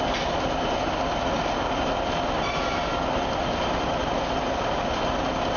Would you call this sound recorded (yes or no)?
yes